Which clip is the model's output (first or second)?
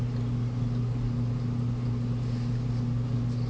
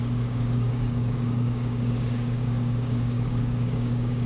second